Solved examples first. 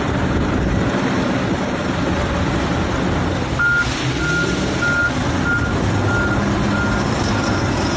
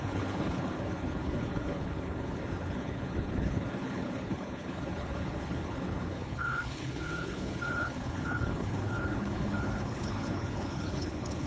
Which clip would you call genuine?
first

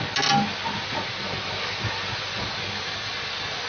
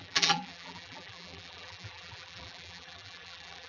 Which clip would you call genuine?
first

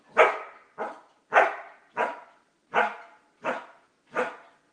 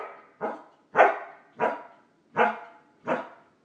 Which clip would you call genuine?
second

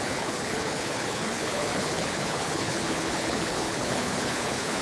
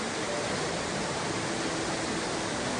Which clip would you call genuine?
second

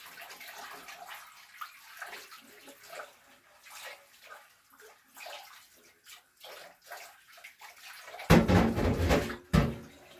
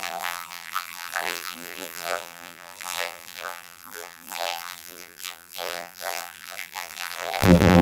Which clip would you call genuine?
first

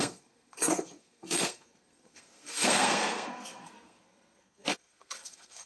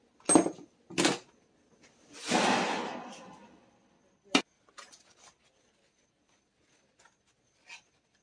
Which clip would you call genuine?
second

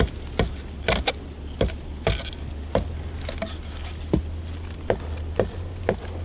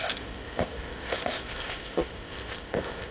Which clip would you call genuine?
first